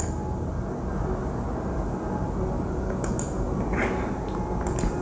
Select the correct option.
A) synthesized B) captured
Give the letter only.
B